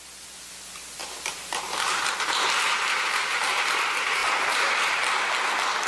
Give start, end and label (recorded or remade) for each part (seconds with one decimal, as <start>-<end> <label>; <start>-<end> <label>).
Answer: 0.0-1.0 recorded; 1.0-3.5 remade; 3.5-4.2 recorded; 4.2-4.9 remade; 4.9-5.9 recorded